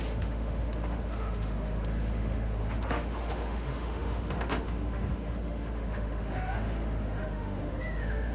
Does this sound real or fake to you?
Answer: fake